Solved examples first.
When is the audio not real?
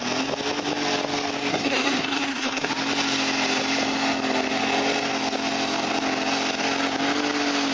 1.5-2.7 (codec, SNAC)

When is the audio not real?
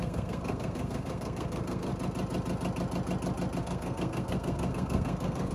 0.0-1.9 (codec, SNAC); 3.6-5.5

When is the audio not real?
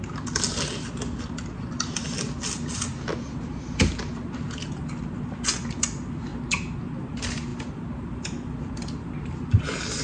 none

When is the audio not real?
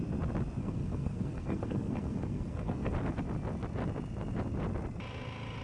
0.6-2.9 (codec, SNAC)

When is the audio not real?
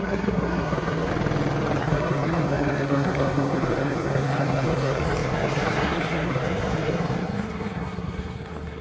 0.0-1.1 (codec, SNAC); 1.8-8.8